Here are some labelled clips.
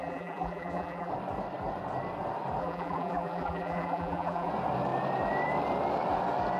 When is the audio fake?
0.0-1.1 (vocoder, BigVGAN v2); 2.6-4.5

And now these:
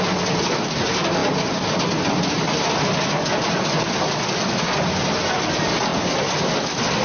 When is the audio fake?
none

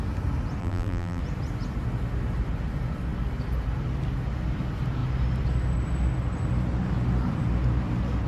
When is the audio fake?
0.6-1.2 (vocoder, BigVGAN v2)

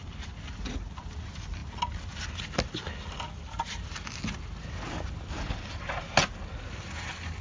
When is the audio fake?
none

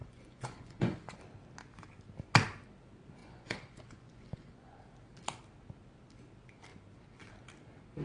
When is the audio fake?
0.0-1.2 (vocoder, Vocos); 3.2-4.8

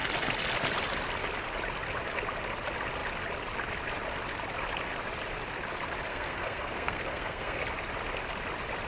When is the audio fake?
6.1-7.6 (codec, SNAC)

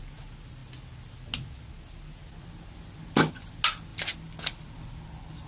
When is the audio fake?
none

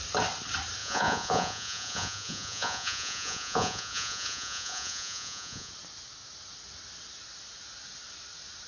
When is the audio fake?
0.8-5.7 (vocoder, Vocos)